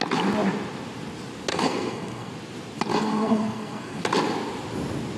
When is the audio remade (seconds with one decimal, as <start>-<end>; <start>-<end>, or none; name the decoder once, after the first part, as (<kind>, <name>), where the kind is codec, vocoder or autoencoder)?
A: 1.5-2.3 (codec, SNAC); 2.9-4.0